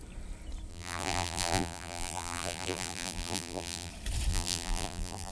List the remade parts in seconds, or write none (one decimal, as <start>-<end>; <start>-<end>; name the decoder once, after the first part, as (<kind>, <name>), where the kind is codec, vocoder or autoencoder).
0.7-3.9 (vocoder, BigVGAN v2); 4.3-5.3

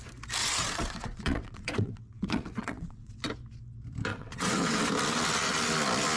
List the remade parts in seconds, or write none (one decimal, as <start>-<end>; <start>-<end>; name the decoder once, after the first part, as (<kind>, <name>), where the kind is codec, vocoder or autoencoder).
0.4-3.3 (vocoder, WaveNeXt); 4.1-4.9

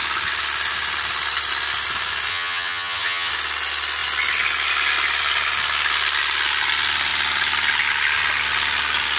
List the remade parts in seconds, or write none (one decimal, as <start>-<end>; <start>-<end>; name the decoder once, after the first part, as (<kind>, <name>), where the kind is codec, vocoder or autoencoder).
2.3-3.3 (vocoder, HiFi-GAN)

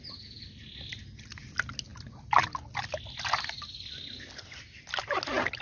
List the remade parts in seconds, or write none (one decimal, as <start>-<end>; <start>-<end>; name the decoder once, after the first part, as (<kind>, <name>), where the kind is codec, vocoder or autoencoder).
none

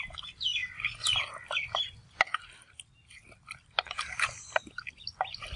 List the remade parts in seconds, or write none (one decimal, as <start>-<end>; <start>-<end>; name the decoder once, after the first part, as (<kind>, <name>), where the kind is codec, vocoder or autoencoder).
none

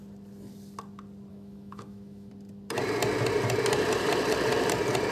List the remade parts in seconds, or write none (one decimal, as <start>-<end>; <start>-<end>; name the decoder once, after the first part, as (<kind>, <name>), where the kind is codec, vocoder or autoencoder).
1.3-2.3 (autoencoder, DAC-VAE)